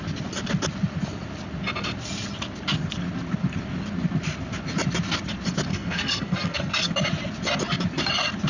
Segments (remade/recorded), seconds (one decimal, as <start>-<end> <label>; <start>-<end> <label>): 0.0-5.7 recorded; 5.7-6.9 remade; 6.9-8.5 recorded